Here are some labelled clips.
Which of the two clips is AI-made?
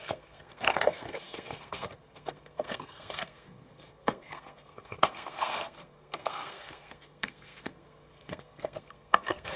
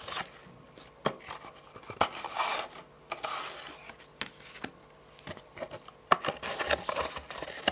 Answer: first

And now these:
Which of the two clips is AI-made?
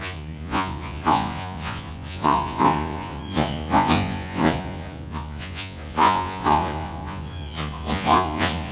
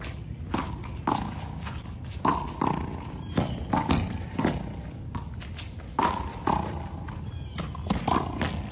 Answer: first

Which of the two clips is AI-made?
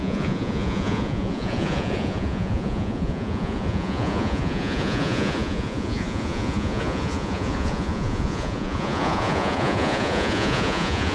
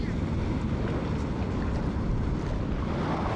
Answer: first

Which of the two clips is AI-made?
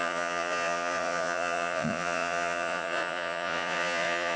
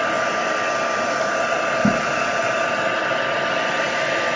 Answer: first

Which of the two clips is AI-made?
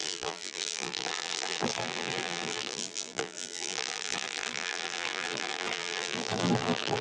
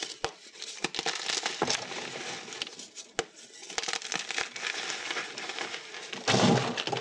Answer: first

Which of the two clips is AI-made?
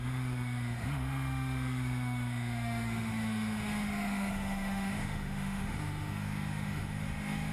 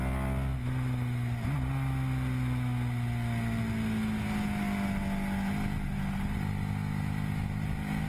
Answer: first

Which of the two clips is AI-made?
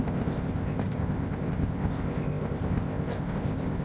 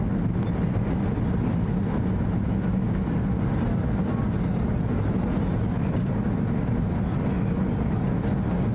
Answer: first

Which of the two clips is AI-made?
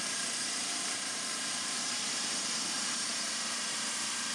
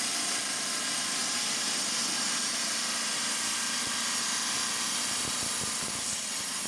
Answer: first